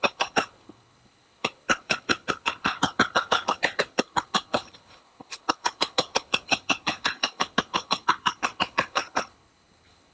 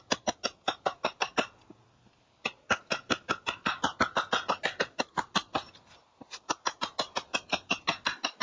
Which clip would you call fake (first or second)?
first